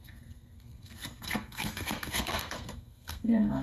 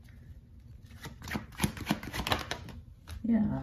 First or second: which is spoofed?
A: first